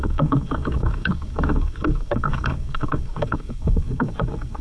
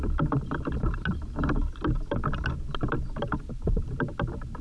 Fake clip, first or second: first